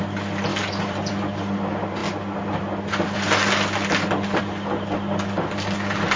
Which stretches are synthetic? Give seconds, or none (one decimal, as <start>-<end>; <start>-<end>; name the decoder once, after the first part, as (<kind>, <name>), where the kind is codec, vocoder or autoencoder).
0.5-1.1 (vocoder, BigVGAN v2); 2.0-4.4